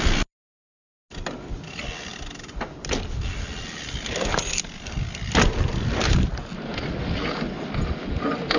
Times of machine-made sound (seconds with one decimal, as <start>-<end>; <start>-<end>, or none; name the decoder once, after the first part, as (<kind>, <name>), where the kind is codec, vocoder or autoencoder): none